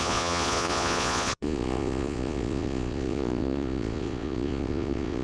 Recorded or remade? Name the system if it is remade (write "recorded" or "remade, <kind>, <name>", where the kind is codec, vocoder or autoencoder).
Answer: remade, vocoder, Vocos